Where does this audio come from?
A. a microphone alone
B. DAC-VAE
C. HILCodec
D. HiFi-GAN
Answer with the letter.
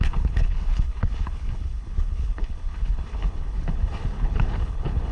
C